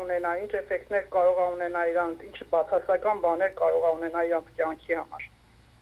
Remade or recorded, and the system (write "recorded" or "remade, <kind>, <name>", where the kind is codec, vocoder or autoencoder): remade, autoencoder, DAC-VAE